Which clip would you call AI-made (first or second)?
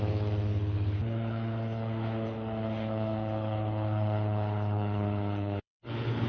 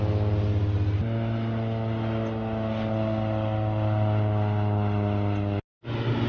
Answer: first